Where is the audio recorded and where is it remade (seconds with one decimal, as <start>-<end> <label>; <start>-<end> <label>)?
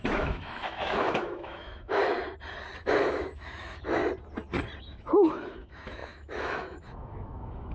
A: 0.0-2.0 remade; 2.0-2.8 recorded; 2.8-4.0 remade; 4.0-4.8 recorded; 4.8-7.7 remade